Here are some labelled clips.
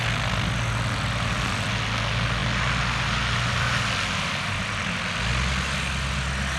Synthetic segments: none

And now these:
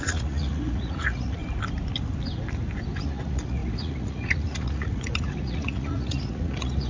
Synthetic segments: 0.0-1.4 (vocoder, Vocos); 3.0-6.9